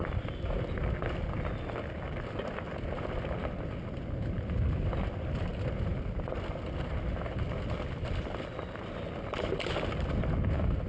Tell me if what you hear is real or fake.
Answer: real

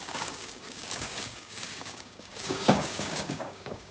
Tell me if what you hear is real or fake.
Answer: fake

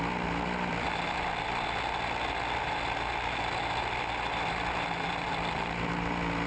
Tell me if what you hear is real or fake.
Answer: real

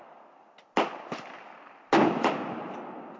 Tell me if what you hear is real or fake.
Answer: real